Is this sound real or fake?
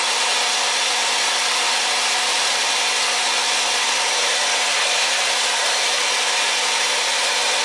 real